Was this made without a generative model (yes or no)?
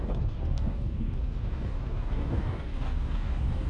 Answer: no